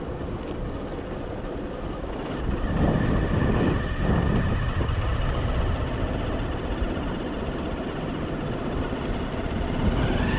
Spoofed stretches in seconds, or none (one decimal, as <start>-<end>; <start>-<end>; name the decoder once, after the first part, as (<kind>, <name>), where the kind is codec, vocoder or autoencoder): 6.5-9.0 (vocoder, BigVGAN v2)